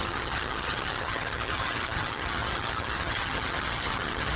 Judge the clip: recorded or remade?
remade